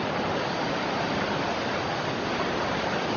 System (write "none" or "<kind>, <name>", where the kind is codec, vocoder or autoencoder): vocoder, BigVGAN v2